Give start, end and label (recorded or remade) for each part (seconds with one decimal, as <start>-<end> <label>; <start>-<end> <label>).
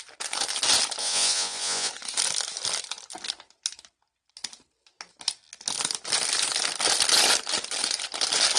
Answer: 0.0-1.0 recorded; 1.0-1.9 remade; 1.9-8.6 recorded